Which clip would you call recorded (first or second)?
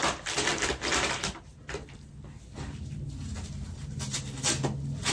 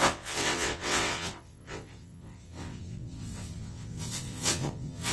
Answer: first